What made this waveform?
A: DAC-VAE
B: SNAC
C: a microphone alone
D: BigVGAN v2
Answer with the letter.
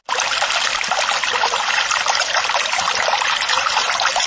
C